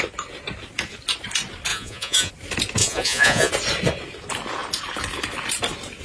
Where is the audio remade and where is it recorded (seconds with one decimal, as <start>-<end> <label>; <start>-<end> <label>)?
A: 0.0-1.7 recorded; 1.7-2.3 remade; 2.3-2.8 recorded; 2.8-3.5 remade; 3.5-6.0 recorded